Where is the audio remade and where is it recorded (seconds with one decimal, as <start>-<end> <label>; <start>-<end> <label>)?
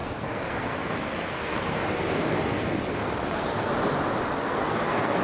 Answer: 0.0-3.7 remade; 3.7-4.4 recorded; 4.4-5.2 remade